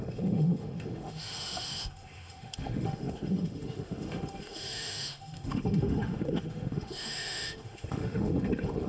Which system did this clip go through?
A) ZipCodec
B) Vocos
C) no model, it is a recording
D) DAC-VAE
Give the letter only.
D